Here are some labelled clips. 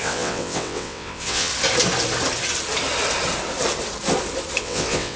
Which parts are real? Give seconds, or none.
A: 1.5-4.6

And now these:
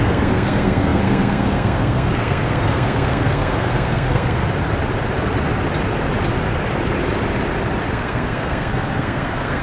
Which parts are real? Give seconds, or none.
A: 4.4-7.9

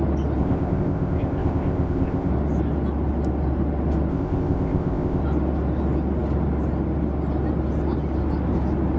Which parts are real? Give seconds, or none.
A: 0.0-0.4; 2.3-4.1; 5.2-9.0

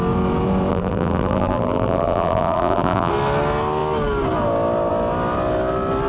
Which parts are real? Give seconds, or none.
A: 0.0-0.7; 3.1-6.1

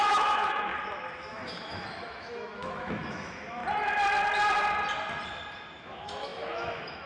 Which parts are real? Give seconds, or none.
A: 0.7-1.2; 3.6-5.8

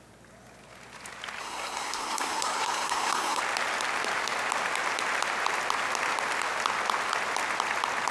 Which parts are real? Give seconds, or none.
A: 0.0-1.4; 3.4-8.1